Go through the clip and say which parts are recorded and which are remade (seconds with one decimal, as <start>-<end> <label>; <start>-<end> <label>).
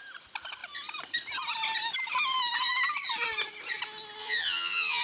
0.0-4.2 recorded; 4.2-5.0 remade